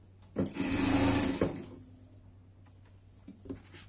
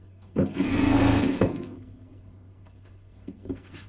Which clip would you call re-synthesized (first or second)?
second